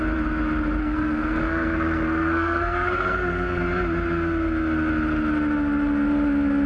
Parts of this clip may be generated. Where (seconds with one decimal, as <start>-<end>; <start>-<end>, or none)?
0.8-3.6